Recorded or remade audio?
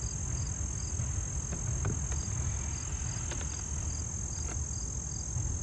recorded